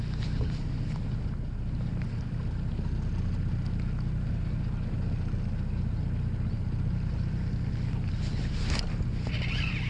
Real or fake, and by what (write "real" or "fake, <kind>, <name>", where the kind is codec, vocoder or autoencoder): real